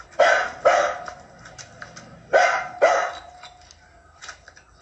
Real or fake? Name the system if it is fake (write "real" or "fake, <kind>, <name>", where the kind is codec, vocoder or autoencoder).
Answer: real